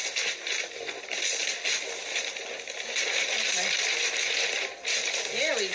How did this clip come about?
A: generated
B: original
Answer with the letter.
B